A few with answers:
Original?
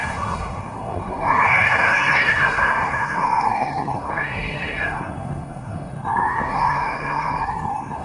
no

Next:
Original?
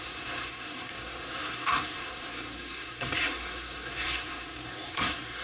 no